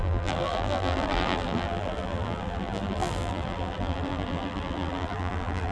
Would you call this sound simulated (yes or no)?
yes